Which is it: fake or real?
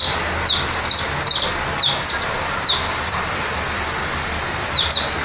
real